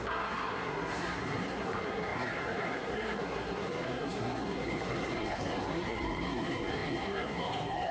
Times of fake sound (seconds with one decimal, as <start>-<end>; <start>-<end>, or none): 0.0-7.9